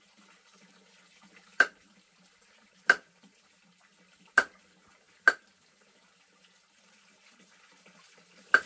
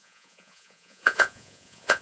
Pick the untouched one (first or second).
first